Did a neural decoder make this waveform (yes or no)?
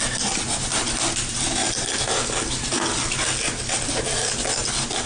no